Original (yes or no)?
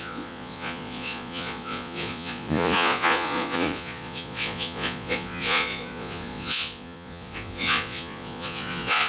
no